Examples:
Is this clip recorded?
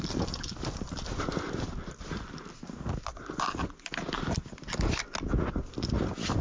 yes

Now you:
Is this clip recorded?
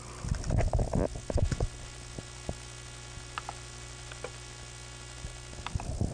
yes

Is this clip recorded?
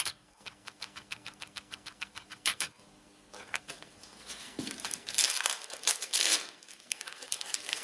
no